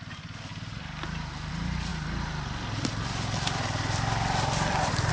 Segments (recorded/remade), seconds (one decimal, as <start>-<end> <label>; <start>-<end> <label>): 0.0-0.5 recorded; 0.5-1.5 remade; 1.5-1.9 recorded; 1.9-5.1 remade